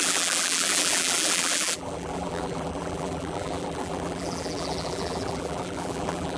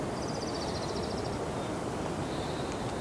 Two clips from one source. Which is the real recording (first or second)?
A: second